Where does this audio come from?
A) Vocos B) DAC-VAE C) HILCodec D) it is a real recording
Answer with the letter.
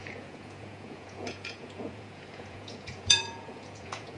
A